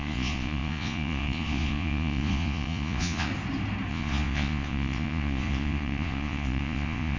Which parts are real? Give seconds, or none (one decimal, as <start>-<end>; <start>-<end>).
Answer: 3.3-3.9